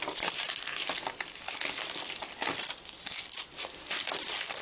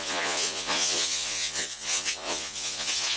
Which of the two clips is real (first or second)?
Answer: first